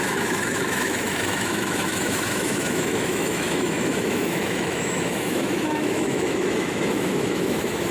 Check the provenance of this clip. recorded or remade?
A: remade